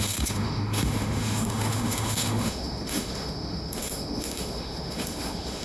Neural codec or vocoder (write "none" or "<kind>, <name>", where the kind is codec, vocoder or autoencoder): autoencoder, DAC-VAE